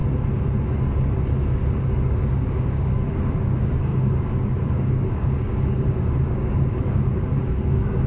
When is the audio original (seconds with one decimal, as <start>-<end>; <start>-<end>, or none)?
0.0-1.4